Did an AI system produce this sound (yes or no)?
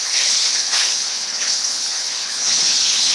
yes